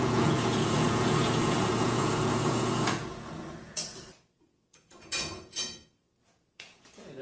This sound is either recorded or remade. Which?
remade